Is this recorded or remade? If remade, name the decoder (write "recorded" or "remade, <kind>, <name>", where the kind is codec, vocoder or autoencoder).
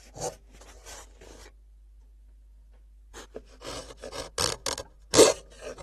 recorded